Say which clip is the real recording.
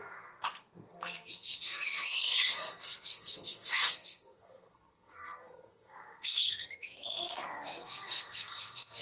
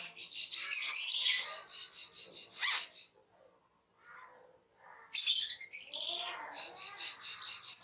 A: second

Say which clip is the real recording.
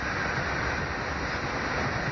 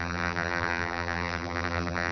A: first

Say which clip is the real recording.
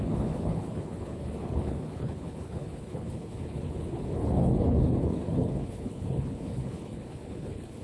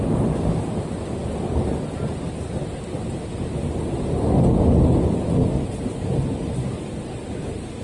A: second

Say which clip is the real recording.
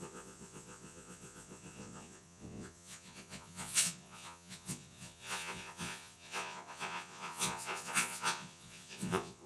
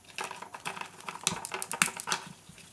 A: second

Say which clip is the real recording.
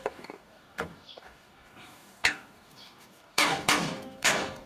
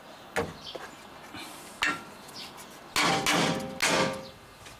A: second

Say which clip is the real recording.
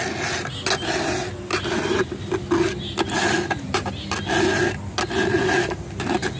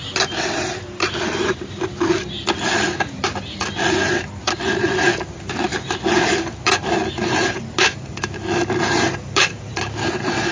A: first